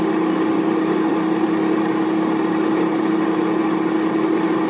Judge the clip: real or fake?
real